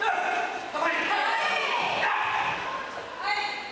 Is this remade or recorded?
recorded